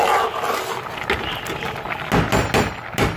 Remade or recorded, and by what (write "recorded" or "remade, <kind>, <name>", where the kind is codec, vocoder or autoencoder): recorded